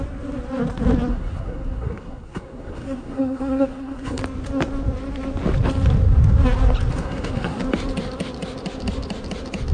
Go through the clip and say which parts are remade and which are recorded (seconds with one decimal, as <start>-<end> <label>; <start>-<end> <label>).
0.0-1.1 recorded; 1.1-4.2 remade; 4.2-6.9 recorded; 6.9-7.6 remade; 7.6-9.7 recorded